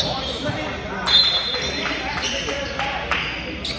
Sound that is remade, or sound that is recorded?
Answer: recorded